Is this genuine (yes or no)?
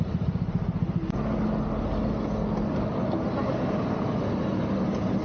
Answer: yes